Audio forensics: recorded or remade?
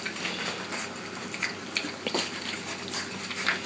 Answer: recorded